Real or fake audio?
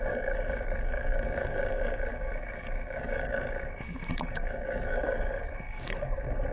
fake